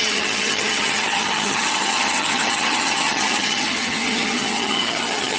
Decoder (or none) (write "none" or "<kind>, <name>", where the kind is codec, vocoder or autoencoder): vocoder, HiFi-GAN